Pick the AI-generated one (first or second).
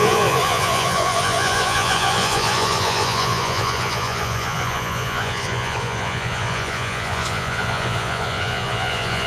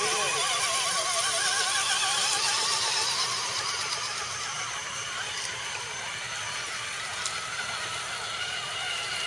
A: first